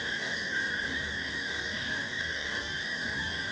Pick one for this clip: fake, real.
fake